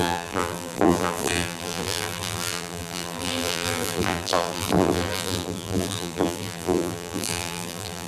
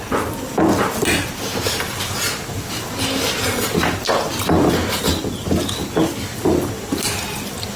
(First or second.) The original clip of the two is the second